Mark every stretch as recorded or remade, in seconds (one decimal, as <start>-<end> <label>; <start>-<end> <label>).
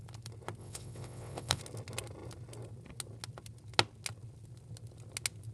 0.0-0.6 recorded; 0.6-1.6 remade; 1.6-5.5 recorded